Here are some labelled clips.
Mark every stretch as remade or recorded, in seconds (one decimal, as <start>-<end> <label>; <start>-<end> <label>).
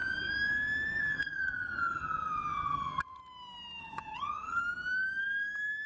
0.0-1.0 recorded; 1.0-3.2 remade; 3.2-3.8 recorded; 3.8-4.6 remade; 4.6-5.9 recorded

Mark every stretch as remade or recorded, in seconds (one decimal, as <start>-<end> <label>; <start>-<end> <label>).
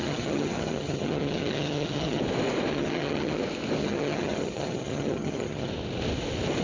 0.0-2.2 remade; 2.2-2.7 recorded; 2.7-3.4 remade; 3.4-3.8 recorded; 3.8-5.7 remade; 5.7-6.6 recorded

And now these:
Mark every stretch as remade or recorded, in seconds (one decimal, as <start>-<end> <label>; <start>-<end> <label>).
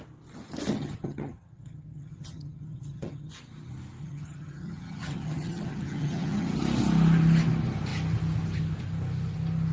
0.0-0.7 recorded; 0.7-3.3 remade; 3.3-4.0 recorded; 4.0-6.6 remade; 6.6-9.7 recorded